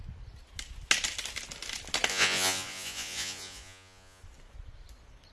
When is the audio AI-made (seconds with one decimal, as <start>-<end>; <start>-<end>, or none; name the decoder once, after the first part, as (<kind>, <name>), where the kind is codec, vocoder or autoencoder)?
2.1-4.2 (vocoder, Vocos)